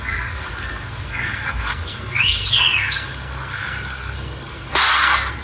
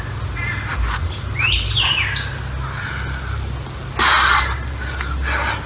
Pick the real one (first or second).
second